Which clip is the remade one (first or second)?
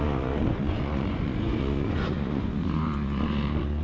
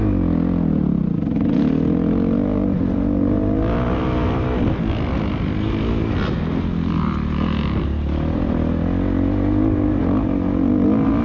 first